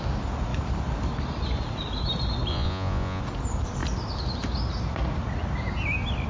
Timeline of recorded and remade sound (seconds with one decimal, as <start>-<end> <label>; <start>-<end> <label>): 0.0-2.5 recorded; 2.5-3.2 remade; 3.2-6.3 recorded